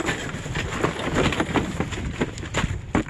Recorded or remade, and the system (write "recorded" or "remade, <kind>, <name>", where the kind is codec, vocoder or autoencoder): recorded